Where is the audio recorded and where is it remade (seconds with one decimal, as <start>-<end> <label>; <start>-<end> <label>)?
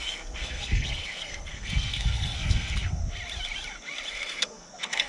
0.0-3.0 remade; 3.0-4.1 recorded; 4.1-5.1 remade